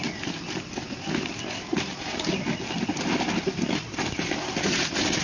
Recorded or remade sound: recorded